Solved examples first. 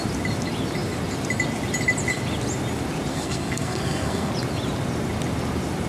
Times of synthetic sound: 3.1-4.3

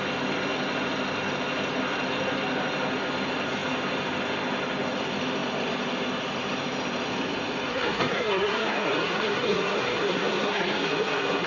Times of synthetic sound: 7.7-11.5

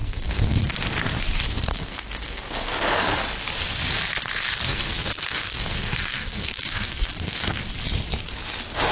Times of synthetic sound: 0.0-0.7; 1.7-3.2; 4.7-7.6

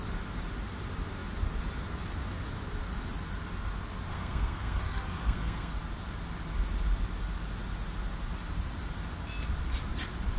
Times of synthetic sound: 4.1-5.7

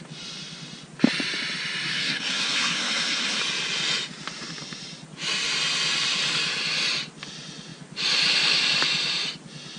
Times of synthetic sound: 1.9-3.4